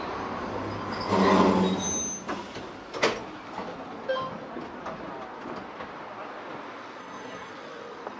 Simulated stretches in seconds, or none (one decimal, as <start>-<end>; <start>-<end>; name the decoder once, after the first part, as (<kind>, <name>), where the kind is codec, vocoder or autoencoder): 7.0-7.5 (codec, SNAC)